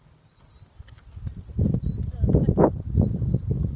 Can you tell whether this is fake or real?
real